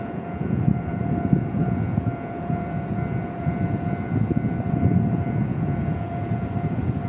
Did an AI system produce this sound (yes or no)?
yes